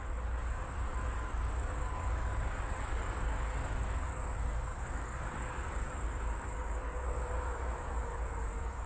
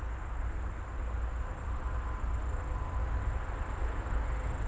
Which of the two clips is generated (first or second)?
first